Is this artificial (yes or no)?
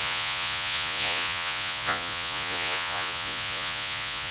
yes